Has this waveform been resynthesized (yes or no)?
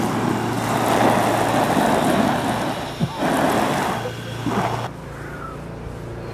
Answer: no